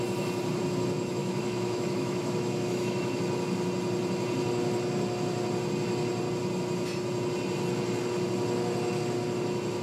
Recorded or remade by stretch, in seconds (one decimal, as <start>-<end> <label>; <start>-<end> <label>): 0.0-1.2 recorded; 1.2-3.2 remade; 3.2-9.8 recorded